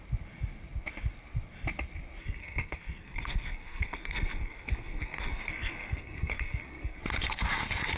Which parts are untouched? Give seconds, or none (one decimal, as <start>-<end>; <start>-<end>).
0.0-2.2; 7.0-8.0